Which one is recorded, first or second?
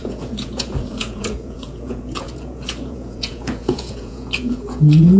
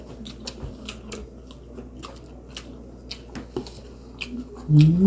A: second